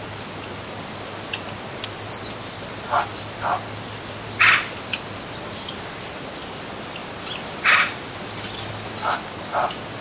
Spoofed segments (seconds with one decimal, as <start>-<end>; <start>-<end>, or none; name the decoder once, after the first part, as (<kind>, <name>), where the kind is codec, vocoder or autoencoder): 7.0-9.1 (vocoder, BigVGAN v2)